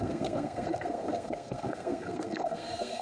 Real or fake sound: fake